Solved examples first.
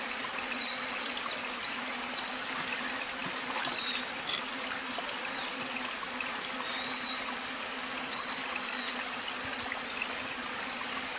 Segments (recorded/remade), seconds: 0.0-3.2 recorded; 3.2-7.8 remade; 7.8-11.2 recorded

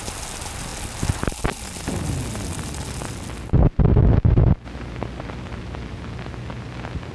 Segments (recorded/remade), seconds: 0.0-7.1 recorded